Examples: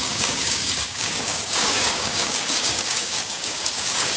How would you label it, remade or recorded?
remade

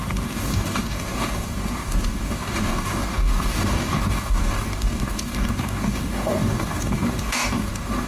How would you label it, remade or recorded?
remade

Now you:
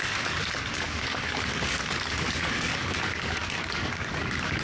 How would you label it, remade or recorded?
remade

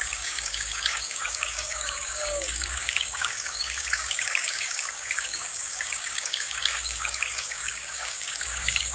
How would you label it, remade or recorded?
remade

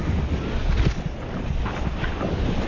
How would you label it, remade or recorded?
recorded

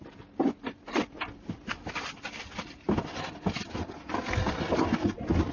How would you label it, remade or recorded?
recorded